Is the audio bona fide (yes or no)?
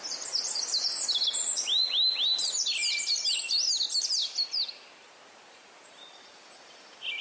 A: yes